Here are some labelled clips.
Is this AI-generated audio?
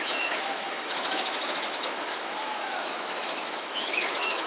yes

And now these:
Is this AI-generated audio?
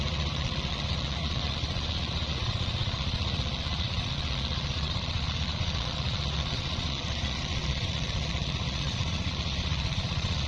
yes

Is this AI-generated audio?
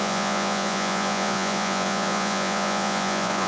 yes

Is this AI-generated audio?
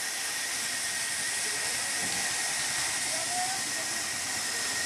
no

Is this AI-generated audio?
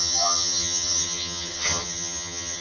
yes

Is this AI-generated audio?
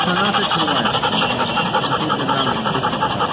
no